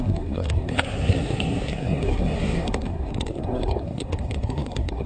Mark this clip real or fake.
fake